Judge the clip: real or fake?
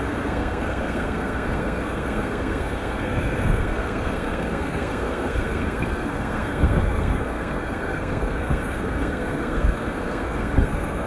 fake